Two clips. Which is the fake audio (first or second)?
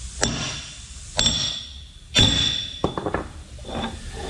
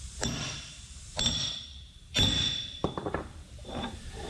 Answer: second